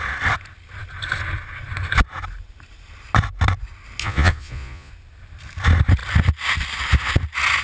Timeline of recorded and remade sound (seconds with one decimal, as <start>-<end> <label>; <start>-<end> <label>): 0.0-4.0 recorded; 4.0-4.9 remade; 4.9-7.6 recorded